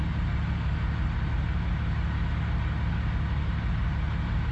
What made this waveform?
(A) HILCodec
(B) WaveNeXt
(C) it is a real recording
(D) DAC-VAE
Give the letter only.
C